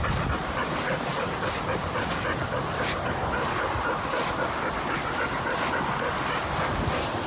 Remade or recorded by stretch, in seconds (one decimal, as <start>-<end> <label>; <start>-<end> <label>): 0.0-7.3 recorded